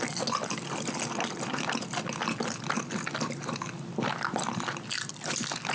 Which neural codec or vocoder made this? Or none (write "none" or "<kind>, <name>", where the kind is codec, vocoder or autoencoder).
none